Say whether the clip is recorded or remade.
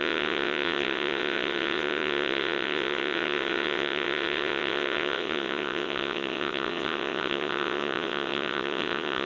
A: remade